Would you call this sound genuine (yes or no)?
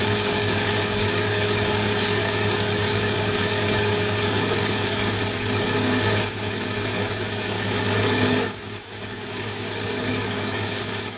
no